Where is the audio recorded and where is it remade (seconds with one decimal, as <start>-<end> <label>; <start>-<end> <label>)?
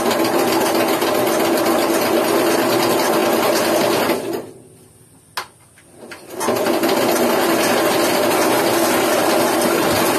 0.0-10.2 recorded